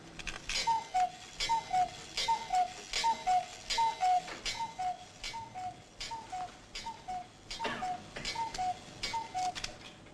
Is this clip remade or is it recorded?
recorded